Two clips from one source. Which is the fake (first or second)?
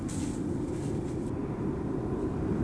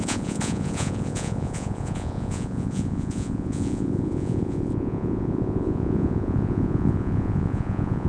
second